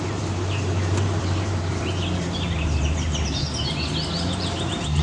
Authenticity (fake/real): fake